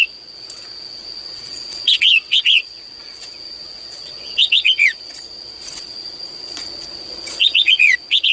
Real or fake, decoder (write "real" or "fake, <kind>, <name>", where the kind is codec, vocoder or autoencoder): fake, vocoder, Vocos